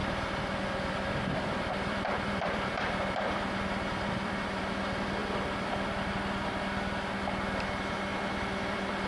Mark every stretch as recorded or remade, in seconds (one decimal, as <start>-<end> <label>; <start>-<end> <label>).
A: 0.0-4.7 remade; 4.7-5.2 recorded; 5.2-6.1 remade; 6.1-8.1 recorded; 8.1-9.1 remade